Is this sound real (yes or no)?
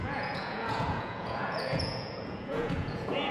no